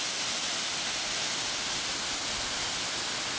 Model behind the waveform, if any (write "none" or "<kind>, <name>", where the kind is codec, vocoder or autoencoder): none